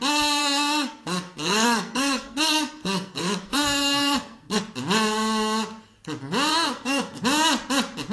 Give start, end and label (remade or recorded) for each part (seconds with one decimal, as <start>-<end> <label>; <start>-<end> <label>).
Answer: 0.0-0.4 recorded; 0.4-4.6 remade; 4.6-6.5 recorded; 6.5-7.2 remade; 7.2-8.1 recorded